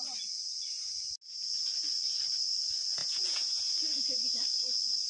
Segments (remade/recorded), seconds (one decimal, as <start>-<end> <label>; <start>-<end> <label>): 0.0-3.0 recorded; 3.0-3.6 remade; 3.6-5.1 recorded